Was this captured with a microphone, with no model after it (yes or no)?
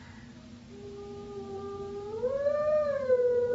yes